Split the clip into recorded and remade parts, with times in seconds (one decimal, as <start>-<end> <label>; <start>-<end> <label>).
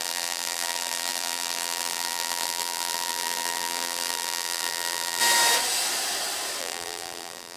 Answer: 0.0-5.2 remade; 5.2-6.6 recorded; 6.6-7.6 remade